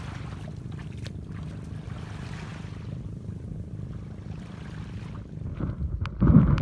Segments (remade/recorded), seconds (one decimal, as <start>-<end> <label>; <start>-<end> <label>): 0.0-6.6 recorded